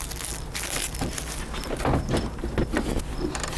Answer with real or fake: real